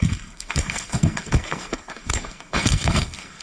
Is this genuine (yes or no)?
no